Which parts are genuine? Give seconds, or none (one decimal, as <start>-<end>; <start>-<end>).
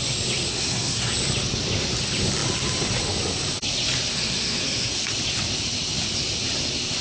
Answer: 0.0-0.5; 1.1-4.1; 5.0-7.0